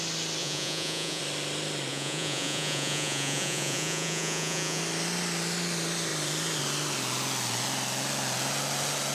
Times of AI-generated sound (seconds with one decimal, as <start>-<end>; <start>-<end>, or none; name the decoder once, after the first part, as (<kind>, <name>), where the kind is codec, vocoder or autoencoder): 0.4-1.2 (vocoder, Vocos); 1.9-4.8